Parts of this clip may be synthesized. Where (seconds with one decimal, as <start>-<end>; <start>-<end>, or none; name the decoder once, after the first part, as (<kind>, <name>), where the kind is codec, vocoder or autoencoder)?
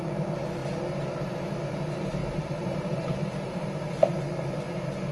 2.2-3.8 (vocoder, BigVGAN v2)